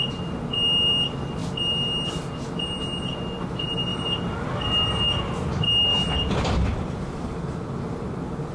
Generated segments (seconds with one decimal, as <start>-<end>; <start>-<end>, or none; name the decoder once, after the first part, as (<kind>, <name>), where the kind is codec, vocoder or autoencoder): 3.9-4.5 (vocoder, BigVGAN v2); 5.9-8.5

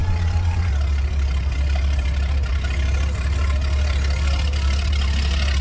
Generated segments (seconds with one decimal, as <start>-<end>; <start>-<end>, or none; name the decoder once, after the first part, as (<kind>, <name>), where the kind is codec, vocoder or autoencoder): 0.0-0.7 (vocoder, Vocos)

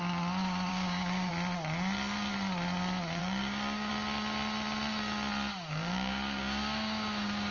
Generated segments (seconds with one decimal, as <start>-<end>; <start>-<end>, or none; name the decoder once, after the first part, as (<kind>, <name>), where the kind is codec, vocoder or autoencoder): 0.7-1.3 (codec, DAC); 3.2-3.9; 5.5-7.5